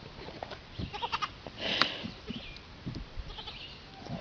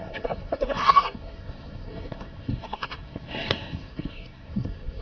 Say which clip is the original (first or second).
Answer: first